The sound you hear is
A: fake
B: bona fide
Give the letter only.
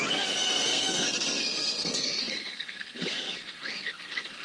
A